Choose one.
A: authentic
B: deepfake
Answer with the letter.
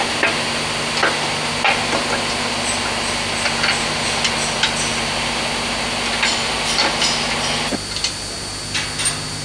A